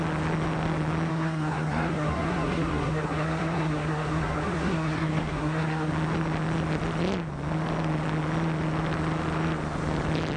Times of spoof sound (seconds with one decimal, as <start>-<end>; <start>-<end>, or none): 1.1-5.9